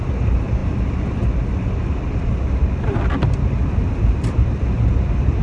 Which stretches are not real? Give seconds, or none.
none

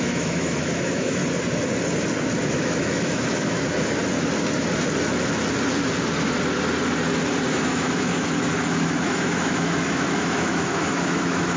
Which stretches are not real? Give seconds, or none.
0.0-1.2 (autoencoder, DAC-VAE); 2.4-4.0; 7.5-11.6

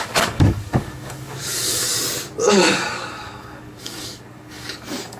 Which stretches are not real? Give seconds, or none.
0.0-1.9 (codec, DAC); 2.5-5.2

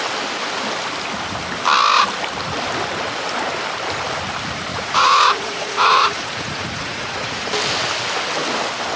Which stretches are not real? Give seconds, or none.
4.7-7.5 (vocoder, Vocos)